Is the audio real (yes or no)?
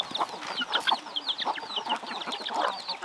yes